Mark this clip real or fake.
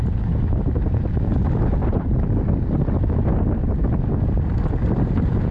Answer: real